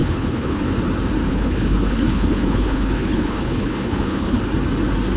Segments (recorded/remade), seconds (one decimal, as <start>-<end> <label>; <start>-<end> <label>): 0.0-0.6 remade; 0.6-1.3 recorded; 1.3-4.4 remade; 4.4-5.2 recorded